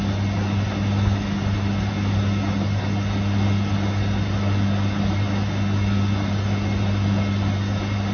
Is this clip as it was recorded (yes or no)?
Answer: yes